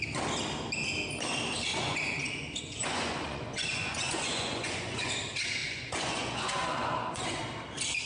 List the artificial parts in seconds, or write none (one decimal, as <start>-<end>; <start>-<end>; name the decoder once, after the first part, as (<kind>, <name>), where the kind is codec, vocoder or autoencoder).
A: 1.7-5.1 (vocoder, Vocos); 5.6-7.4